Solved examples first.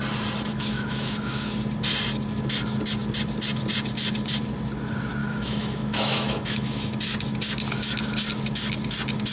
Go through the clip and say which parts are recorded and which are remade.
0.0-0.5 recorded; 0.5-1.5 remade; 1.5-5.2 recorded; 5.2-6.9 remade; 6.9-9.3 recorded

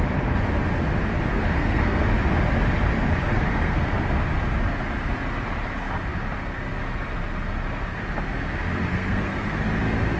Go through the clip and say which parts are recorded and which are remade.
0.0-1.3 recorded; 1.3-2.0 remade; 2.0-3.2 recorded; 3.2-3.9 remade; 3.9-8.9 recorded; 8.9-9.6 remade; 9.6-10.2 recorded